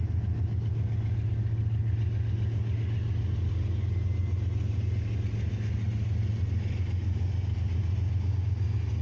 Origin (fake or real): real